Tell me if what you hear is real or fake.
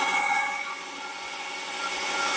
fake